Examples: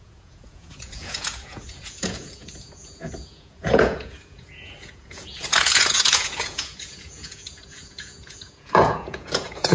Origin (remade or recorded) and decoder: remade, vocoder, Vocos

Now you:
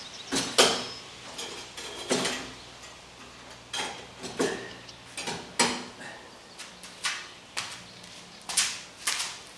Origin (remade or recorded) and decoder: recorded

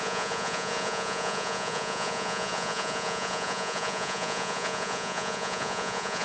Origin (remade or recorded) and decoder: remade, vocoder, Vocos